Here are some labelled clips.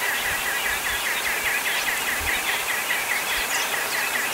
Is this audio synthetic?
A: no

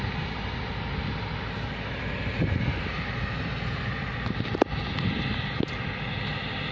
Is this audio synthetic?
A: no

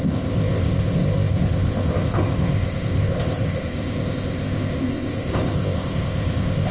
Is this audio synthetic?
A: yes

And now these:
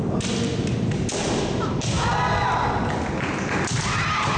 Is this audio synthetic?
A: no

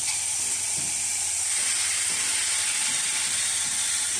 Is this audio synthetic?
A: yes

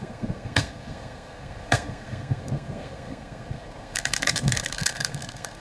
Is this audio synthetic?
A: yes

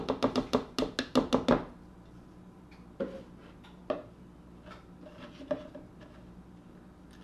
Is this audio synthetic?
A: no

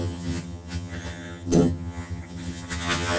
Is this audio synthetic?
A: yes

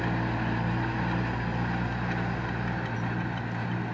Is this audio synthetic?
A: no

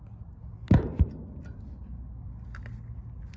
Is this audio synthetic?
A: no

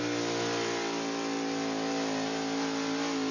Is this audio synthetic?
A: no